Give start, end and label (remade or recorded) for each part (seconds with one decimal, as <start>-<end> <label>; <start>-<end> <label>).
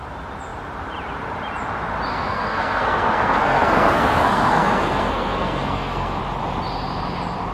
0.0-2.1 recorded; 2.1-6.2 remade; 6.2-7.5 recorded